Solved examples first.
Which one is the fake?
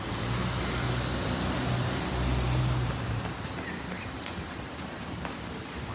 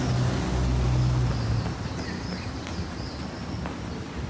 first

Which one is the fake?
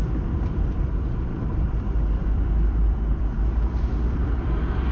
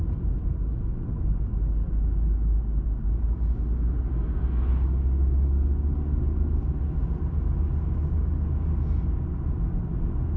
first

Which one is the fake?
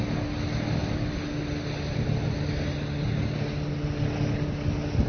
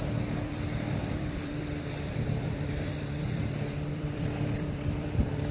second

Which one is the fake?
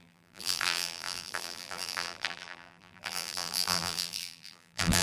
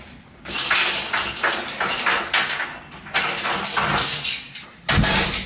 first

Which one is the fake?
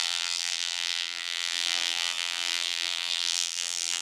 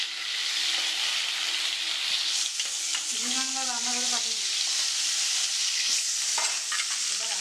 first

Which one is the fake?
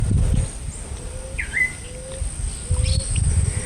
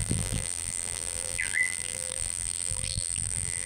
second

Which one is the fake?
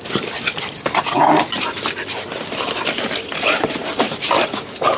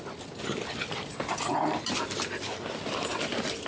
first